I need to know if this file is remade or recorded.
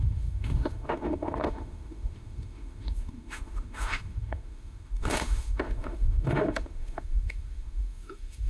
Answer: remade